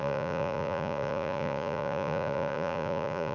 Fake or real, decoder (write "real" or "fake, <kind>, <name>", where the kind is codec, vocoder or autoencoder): fake, vocoder, Vocos